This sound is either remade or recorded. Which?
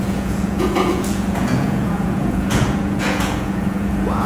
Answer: remade